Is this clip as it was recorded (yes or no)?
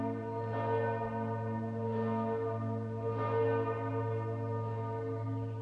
yes